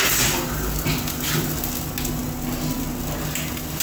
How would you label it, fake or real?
real